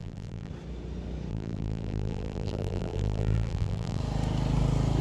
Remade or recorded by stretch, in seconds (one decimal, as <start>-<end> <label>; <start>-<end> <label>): 0.0-0.5 remade; 0.5-1.3 recorded; 1.3-4.0 remade; 4.0-5.0 recorded